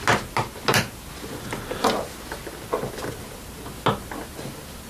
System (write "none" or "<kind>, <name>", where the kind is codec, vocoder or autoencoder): none